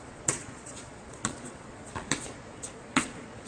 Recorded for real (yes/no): no